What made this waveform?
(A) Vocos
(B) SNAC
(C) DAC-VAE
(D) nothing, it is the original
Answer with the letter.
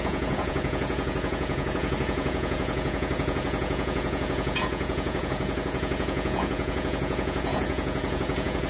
A